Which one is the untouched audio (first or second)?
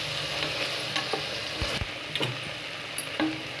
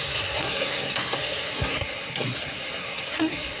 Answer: first